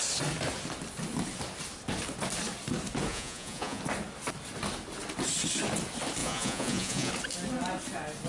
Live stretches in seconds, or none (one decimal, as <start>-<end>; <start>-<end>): 0.0-3.1; 3.8-6.2; 7.1-8.3